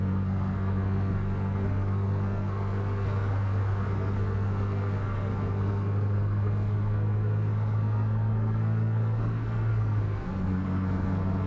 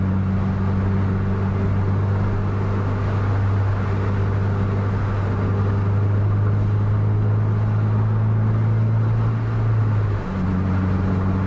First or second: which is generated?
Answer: first